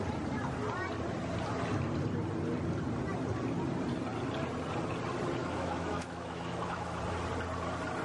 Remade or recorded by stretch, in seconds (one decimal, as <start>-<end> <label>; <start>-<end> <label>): 0.0-5.4 recorded; 5.4-7.0 remade; 7.0-8.0 recorded